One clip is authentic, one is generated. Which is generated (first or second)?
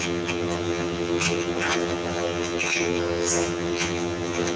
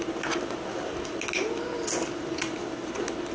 first